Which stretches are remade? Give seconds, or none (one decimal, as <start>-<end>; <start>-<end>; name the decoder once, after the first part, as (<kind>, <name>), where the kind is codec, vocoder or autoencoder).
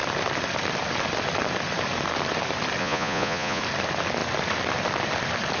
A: 2.8-3.6 (vocoder, Vocos)